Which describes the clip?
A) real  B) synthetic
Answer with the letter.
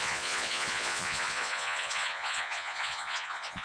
B